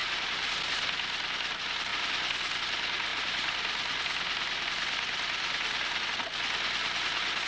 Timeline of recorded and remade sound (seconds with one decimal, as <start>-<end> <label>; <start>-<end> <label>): 0.0-0.5 remade; 0.5-1.9 recorded; 1.9-2.6 remade; 2.6-3.1 recorded; 3.1-6.0 remade; 6.0-7.5 recorded